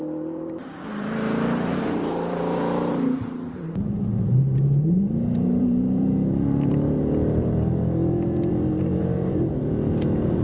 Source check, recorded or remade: remade